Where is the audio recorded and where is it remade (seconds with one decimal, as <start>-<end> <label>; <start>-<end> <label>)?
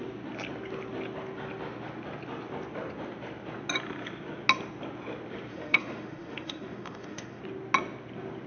0.0-5.5 recorded; 5.5-7.4 remade; 7.4-8.5 recorded